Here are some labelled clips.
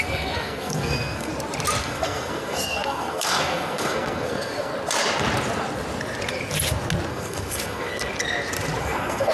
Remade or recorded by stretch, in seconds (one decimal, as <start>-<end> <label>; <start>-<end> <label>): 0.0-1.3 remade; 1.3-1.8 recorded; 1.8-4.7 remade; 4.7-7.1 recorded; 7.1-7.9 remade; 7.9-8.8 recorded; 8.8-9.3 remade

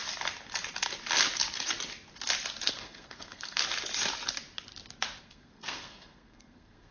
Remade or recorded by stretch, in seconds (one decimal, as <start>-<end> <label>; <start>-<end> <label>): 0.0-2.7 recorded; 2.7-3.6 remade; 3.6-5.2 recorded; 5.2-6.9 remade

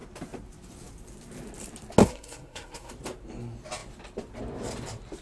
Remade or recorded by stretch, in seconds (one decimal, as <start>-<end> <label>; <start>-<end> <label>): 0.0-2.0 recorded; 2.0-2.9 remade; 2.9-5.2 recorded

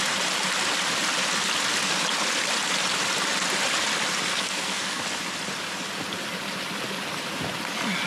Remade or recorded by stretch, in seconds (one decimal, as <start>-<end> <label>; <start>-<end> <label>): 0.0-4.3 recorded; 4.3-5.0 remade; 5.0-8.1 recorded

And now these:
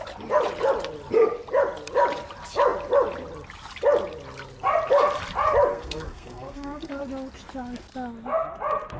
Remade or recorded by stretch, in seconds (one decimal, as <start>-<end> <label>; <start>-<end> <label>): 0.0-5.7 recorded; 5.7-7.0 remade; 7.0-9.0 recorded